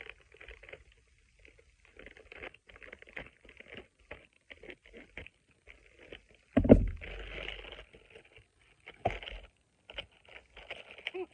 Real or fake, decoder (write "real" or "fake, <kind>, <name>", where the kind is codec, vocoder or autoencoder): real